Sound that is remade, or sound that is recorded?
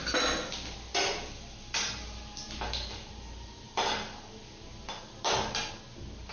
recorded